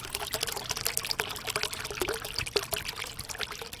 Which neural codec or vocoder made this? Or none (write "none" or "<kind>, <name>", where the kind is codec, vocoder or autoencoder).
vocoder, BigVGAN v2